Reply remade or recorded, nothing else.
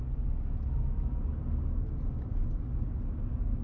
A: recorded